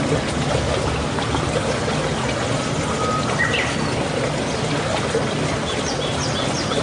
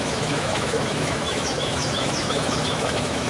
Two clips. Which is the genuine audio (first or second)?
first